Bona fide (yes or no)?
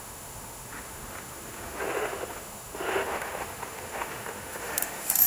no